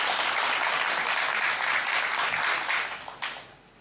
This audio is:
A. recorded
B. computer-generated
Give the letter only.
A